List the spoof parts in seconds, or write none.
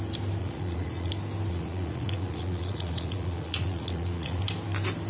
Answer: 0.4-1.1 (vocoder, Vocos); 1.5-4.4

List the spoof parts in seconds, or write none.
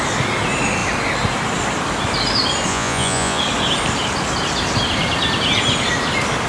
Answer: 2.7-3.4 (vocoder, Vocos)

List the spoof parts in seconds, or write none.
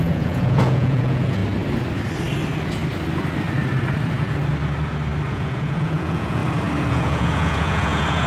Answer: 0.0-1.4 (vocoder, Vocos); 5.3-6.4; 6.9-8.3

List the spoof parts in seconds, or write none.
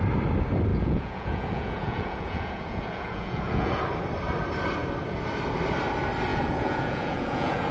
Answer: 0.7-3.8 (vocoder, Vocos); 6.3-7.7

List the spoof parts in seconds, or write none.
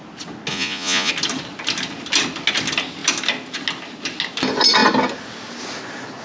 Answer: 0.5-1.1 (vocoder, Vocos)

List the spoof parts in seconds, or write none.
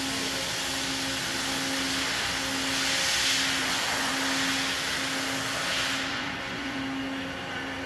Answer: 3.6-4.1 (vocoder, Vocos); 6.1-6.8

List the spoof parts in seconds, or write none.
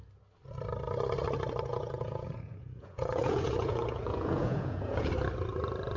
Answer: 1.7-5.1 (vocoder, Vocos)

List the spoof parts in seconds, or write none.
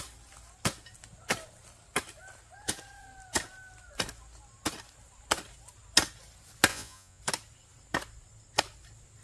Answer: 6.7-7.2 (vocoder, Vocos)